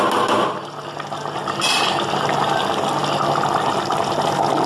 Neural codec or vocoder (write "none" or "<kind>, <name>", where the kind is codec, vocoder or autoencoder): none